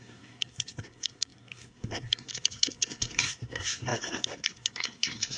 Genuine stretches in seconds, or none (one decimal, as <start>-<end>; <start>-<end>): none